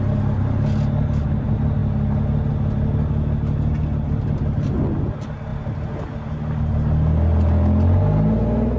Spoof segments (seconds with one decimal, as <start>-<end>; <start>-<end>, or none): none